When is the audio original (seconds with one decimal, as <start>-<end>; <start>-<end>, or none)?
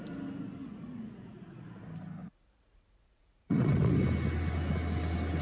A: 0.0-0.6; 1.7-2.2; 3.9-5.4